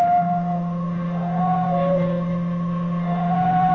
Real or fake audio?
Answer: fake